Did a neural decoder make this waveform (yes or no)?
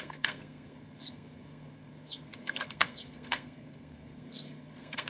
yes